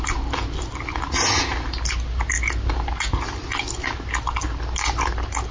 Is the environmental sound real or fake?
real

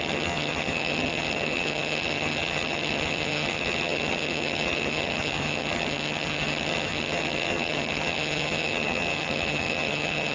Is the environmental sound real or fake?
fake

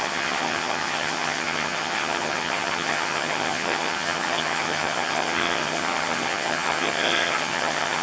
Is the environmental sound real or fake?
fake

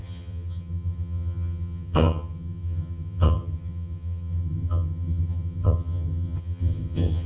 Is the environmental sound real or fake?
fake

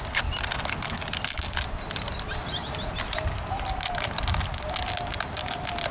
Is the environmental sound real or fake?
real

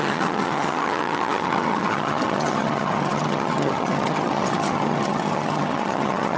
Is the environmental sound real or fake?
fake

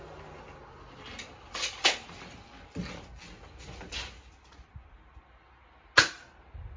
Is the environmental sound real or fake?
real